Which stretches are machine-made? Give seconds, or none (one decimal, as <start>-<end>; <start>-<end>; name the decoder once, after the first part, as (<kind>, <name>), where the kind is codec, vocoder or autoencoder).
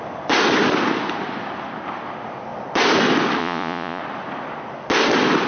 3.4-4.0 (vocoder, Vocos)